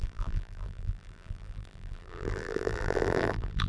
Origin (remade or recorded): remade